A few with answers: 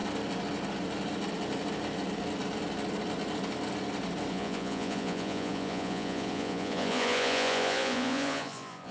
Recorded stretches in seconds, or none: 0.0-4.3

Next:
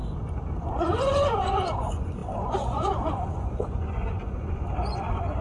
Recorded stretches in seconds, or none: 0.0-0.7

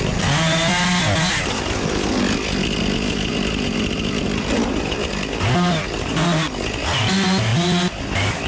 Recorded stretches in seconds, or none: 0.0-8.5

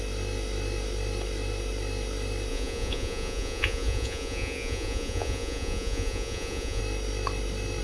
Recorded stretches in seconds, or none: 0.0-2.5; 6.8-7.8

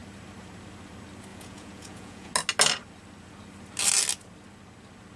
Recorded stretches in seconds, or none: 0.0-1.3; 2.3-5.2